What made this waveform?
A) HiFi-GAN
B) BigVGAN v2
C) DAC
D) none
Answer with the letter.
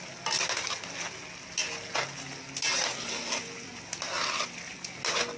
D